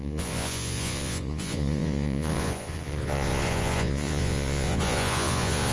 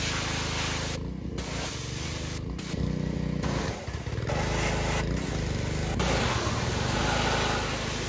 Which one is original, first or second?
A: second